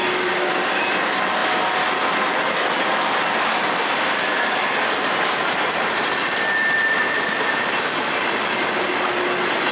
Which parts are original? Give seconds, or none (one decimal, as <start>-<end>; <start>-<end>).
0.8-3.5; 4.7-9.7